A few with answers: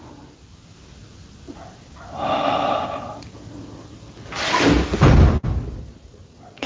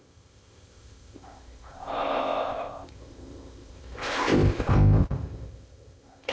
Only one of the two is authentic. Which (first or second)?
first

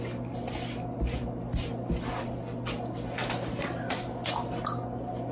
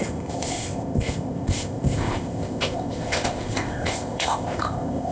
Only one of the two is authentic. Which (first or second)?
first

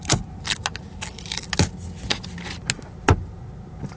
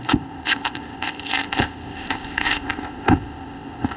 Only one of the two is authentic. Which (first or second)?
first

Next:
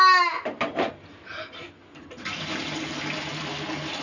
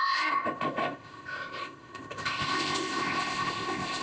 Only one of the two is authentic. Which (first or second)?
first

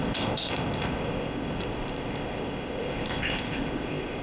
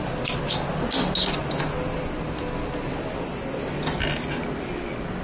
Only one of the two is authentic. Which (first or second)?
second